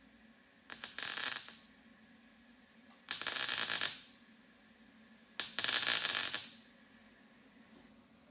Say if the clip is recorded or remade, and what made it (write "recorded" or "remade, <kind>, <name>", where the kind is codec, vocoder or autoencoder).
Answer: recorded